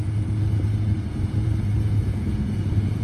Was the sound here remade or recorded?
remade